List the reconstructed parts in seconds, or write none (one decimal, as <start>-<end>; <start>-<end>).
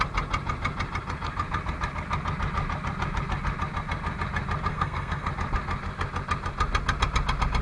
4.7-5.3